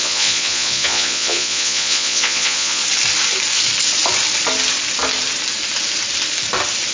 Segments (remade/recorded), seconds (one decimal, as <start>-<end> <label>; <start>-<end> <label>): 0.0-2.8 remade; 2.8-6.9 recorded